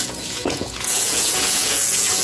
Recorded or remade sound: remade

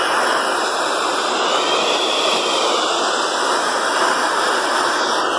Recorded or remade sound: recorded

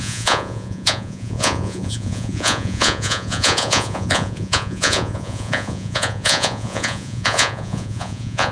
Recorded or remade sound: remade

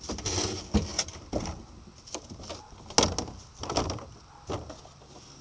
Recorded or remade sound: recorded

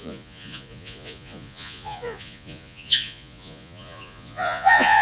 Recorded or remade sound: remade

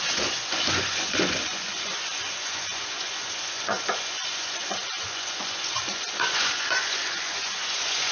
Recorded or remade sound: remade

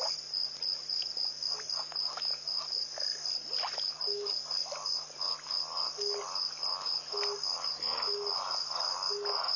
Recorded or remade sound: recorded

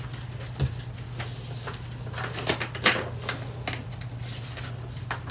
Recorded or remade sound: recorded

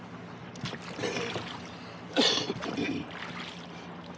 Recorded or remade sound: recorded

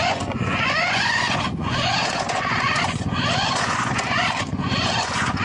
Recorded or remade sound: remade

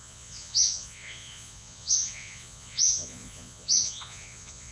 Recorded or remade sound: remade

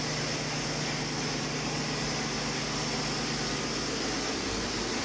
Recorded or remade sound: recorded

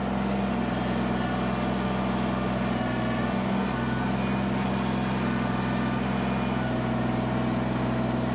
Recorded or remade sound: recorded